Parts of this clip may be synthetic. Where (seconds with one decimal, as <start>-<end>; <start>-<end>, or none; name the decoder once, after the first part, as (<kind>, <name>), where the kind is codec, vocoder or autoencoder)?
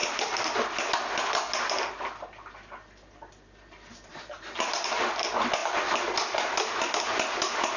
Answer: 0.0-0.9 (vocoder, BigVGAN v2); 4.1-4.8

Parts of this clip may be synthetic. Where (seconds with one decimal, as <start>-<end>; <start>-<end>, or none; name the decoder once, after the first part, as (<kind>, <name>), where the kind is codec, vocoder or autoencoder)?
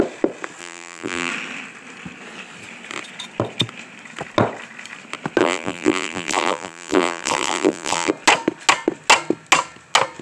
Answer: 0.6-1.3 (vocoder, BigVGAN v2); 5.4-8.1